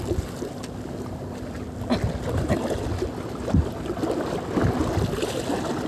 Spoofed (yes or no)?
no